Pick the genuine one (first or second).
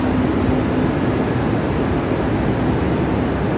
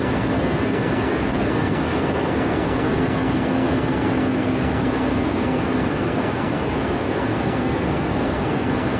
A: first